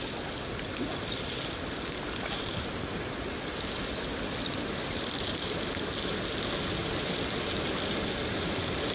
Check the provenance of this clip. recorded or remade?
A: recorded